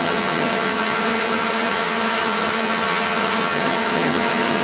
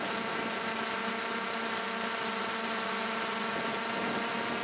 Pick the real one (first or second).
second